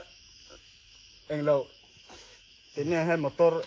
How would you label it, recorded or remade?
remade